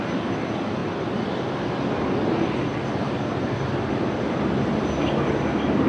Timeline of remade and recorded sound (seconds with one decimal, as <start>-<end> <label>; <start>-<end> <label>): 0.0-5.9 recorded